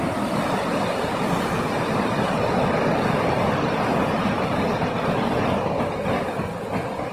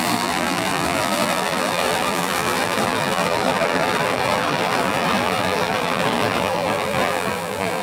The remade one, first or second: second